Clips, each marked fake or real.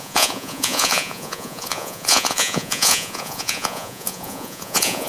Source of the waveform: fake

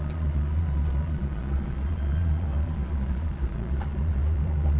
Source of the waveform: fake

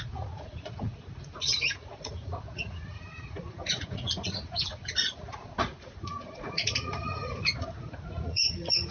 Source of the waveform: fake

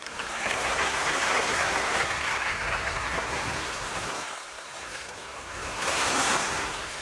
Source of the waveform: fake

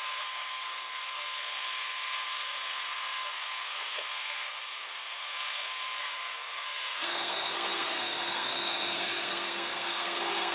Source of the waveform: fake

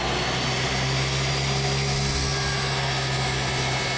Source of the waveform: real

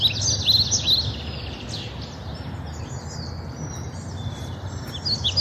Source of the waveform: real